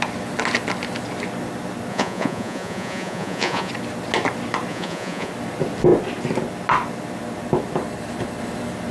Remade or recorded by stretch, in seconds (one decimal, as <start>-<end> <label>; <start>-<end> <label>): 0.0-1.9 recorded; 1.9-3.7 remade; 3.7-4.7 recorded; 4.7-5.3 remade; 5.3-8.9 recorded